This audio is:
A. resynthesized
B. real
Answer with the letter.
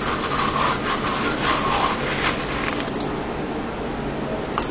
B